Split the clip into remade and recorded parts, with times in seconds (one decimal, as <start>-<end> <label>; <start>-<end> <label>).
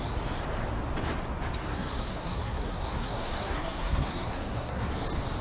0.0-1.7 recorded; 1.7-4.9 remade; 4.9-5.4 recorded